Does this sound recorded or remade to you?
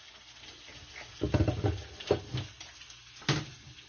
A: recorded